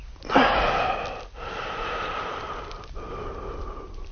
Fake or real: real